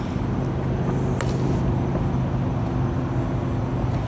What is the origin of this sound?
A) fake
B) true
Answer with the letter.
B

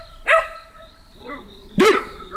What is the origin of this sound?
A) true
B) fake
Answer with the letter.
B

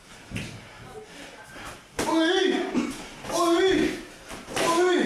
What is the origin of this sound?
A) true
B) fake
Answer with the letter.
A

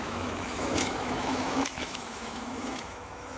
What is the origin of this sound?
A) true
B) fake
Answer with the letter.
B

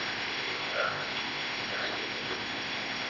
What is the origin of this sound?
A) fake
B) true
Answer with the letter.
A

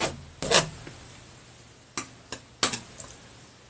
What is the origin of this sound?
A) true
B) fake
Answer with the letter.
A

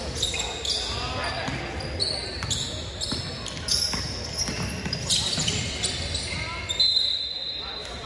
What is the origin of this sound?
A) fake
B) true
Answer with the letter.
B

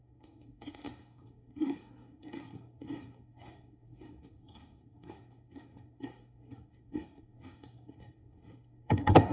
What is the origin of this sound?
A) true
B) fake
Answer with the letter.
B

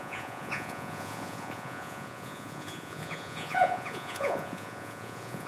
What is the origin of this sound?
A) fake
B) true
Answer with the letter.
A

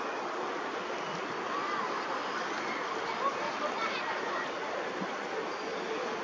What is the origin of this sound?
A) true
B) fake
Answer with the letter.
A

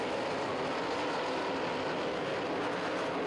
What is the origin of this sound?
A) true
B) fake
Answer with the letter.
A